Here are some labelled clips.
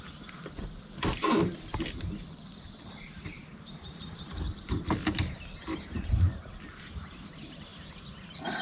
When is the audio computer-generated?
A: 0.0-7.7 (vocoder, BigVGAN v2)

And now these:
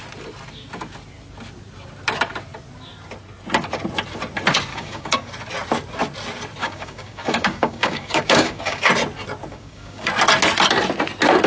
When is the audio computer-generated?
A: 4.7-5.3 (codec, DAC); 6.6-8.8; 9.5-10.1

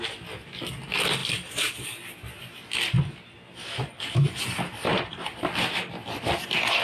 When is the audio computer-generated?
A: 4.9-5.9 (vocoder, BigVGAN v2)

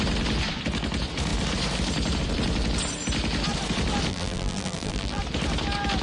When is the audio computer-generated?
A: 4.1-5.2 (vocoder, BigVGAN v2)

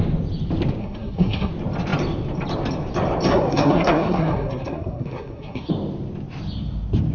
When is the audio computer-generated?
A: 0.8-1.5 (codec, SNAC); 3.3-5.7

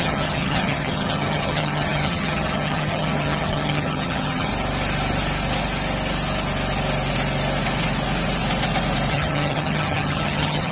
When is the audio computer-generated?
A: 0.0-4.5 (vocoder, HiFi-GAN); 9.1-10.7

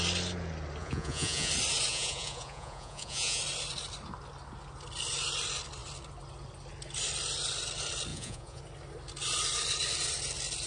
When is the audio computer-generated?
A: 0.8-1.5 (vocoder, Vocos); 1.9-3.4; 8.1-8.6